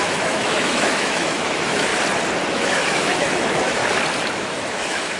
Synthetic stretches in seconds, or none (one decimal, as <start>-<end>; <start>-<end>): 0.0-1.9; 2.5-3.8; 4.3-5.2

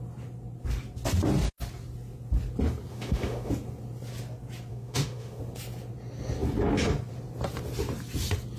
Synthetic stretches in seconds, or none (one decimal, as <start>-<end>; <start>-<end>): 2.9-3.5; 4.7-5.4

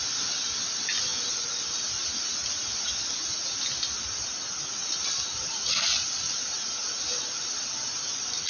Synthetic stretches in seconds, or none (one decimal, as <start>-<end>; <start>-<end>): none